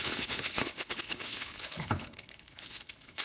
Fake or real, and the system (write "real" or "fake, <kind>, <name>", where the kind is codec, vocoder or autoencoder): fake, codec, HILCodec